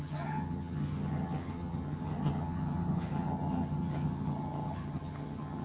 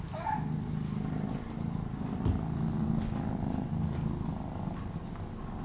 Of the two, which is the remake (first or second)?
first